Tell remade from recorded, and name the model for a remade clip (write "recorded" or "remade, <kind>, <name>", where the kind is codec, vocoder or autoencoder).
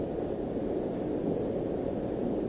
recorded